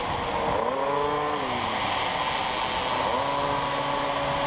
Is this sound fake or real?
real